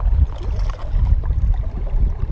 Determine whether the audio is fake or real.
real